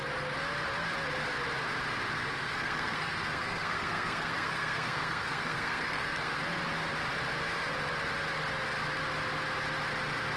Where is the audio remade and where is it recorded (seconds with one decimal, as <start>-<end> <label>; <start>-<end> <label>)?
0.0-2.3 recorded; 2.3-6.4 remade; 6.4-10.4 recorded